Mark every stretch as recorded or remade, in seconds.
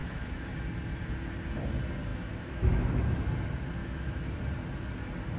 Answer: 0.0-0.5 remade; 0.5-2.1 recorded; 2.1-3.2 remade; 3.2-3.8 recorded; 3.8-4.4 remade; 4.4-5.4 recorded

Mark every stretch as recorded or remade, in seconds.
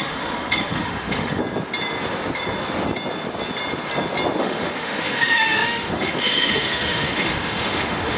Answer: 0.0-1.4 remade; 1.4-4.4 recorded; 4.4-8.2 remade